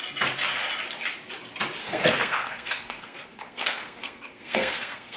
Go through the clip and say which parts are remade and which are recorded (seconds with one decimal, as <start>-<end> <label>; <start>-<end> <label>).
0.0-1.8 recorded; 1.8-5.2 remade